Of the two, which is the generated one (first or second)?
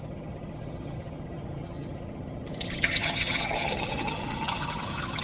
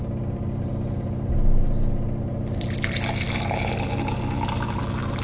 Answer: first